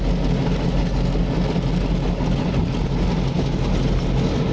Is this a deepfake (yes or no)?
no